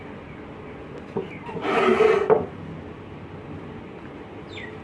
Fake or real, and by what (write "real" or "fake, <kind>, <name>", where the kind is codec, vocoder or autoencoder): real